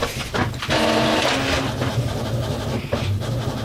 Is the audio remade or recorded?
recorded